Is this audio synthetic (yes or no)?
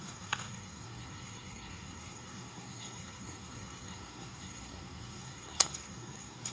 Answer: yes